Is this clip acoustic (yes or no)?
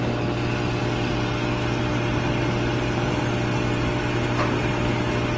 yes